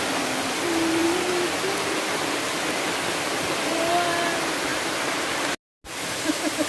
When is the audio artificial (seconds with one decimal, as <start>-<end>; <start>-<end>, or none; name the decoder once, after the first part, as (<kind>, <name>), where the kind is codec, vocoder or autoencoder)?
none